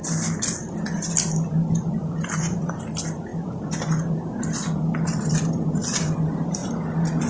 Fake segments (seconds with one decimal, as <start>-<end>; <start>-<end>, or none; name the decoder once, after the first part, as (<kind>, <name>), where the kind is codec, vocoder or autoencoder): none